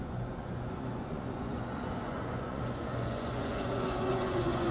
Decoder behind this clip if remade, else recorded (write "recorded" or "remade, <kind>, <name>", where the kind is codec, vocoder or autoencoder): remade, vocoder, Vocos